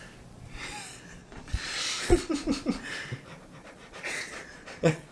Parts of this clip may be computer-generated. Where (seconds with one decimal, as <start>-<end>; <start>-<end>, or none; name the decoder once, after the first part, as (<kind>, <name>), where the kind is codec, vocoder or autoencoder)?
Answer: 1.2-2.3 (vocoder, Vocos); 3.6-5.1